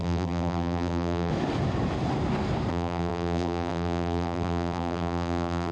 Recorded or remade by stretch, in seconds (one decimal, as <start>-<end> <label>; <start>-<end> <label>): 0.0-1.3 remade; 1.3-2.7 recorded; 2.7-5.7 remade

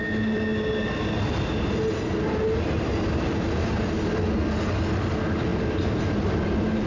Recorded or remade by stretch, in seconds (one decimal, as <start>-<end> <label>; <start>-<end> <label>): 0.0-5.5 recorded; 5.5-6.0 remade; 6.0-6.9 recorded

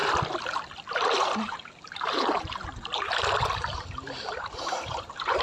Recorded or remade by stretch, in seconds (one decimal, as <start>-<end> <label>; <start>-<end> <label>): 0.0-0.9 recorded; 0.9-3.2 remade; 3.2-4.4 recorded; 4.4-5.4 remade

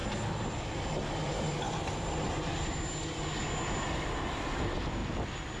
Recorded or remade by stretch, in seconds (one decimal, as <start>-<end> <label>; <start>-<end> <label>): 0.0-5.6 recorded

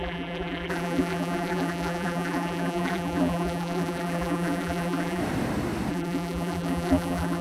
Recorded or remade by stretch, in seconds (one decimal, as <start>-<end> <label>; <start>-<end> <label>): 0.0-5.2 remade; 5.2-5.9 recorded; 5.9-7.4 remade

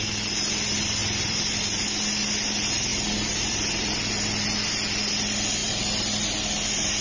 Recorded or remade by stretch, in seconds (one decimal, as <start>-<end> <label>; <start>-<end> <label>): 0.0-1.0 recorded; 1.0-1.8 remade; 1.8-2.9 recorded; 2.9-4.1 remade; 4.1-7.0 recorded

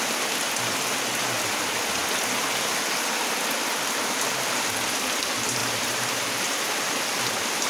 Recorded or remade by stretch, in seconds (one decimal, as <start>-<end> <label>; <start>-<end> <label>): 0.0-5.6 recorded; 5.6-6.8 remade; 6.8-7.7 recorded

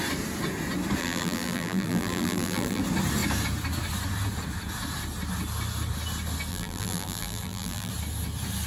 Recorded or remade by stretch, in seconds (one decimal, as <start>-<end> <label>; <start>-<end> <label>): 0.0-1.0 recorded; 1.0-2.8 remade; 2.8-6.5 recorded; 6.5-7.9 remade; 7.9-8.7 recorded